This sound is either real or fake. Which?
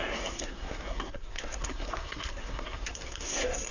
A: fake